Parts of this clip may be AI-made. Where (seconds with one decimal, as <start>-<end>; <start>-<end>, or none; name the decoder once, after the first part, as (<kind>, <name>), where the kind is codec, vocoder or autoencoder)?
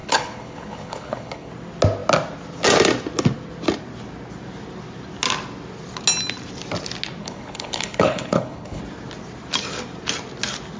0.0-1.5 (codec, HILCodec); 7.2-8.8